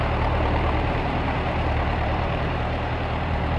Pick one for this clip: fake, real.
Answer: fake